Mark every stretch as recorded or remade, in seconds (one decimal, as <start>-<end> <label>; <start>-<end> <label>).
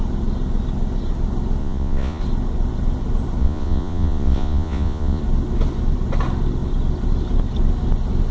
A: 0.0-1.6 recorded; 1.6-2.2 remade; 2.2-3.4 recorded; 3.4-5.2 remade; 5.2-8.3 recorded